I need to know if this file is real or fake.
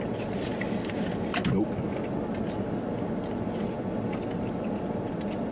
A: real